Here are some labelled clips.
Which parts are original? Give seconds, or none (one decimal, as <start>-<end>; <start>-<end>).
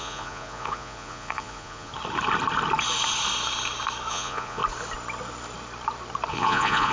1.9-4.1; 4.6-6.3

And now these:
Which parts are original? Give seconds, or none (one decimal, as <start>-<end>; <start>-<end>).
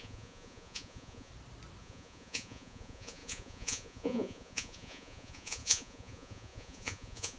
1.3-1.8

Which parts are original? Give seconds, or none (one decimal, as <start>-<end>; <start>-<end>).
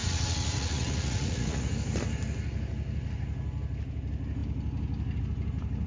1.7-5.9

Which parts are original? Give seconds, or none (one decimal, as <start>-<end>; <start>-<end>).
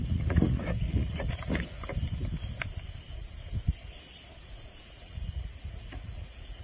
1.8-4.4